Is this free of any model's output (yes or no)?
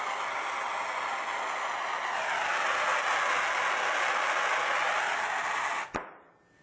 yes